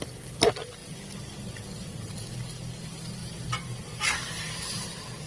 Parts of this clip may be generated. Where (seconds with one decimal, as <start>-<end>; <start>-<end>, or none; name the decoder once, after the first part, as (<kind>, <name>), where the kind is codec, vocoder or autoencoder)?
3.2-4.5 (vocoder, BigVGAN v2)